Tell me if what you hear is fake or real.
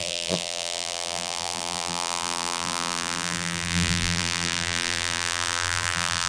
fake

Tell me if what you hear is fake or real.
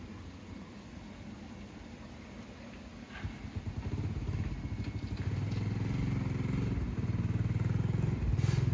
real